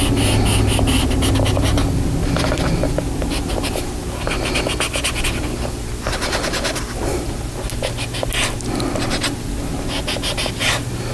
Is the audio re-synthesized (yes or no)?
no